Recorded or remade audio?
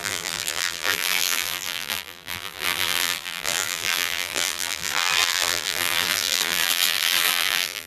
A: remade